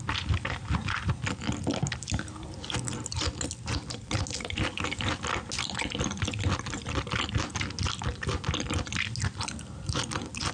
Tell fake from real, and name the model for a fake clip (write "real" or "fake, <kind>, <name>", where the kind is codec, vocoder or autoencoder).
real